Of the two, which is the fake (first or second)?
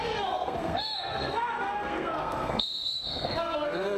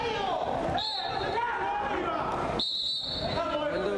first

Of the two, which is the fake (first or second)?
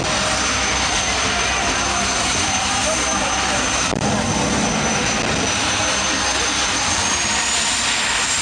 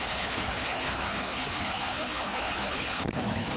second